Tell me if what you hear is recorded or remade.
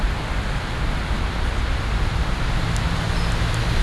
recorded